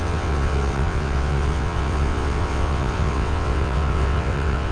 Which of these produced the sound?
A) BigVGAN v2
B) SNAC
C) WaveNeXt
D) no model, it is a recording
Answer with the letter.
C